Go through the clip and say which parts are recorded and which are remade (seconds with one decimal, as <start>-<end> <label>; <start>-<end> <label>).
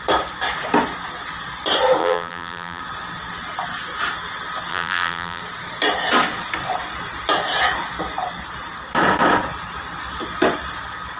0.0-2.0 recorded; 2.0-2.8 remade; 2.8-4.7 recorded; 4.7-5.4 remade; 5.4-11.2 recorded